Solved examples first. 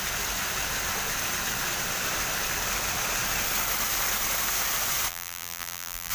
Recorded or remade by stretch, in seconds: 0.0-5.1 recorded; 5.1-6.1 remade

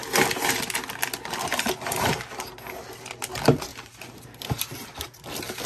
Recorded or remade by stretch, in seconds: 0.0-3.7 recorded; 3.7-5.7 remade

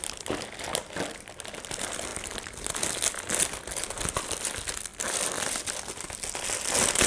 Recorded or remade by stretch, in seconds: 0.0-7.1 recorded

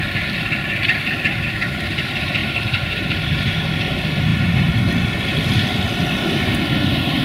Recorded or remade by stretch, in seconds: 0.0-2.4 recorded; 2.4-3.7 remade; 3.7-4.3 recorded; 4.3-4.8 remade; 4.8-7.2 recorded